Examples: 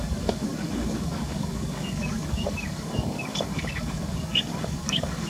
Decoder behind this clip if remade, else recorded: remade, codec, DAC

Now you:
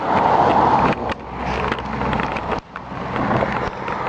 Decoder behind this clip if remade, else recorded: recorded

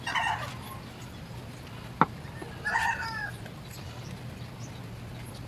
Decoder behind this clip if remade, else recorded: recorded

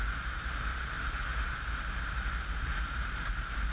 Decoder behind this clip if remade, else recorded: recorded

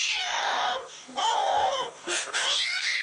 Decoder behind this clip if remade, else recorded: remade, codec, DAC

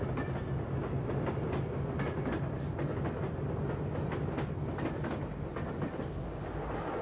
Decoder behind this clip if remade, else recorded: recorded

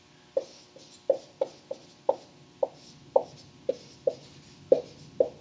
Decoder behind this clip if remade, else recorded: recorded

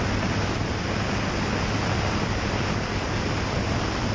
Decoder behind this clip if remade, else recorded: recorded